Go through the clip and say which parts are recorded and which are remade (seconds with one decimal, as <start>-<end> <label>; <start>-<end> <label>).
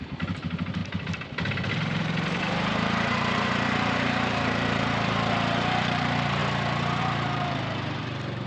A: 0.0-0.8 remade; 0.8-1.7 recorded; 1.7-6.4 remade; 6.4-7.0 recorded; 7.0-8.5 remade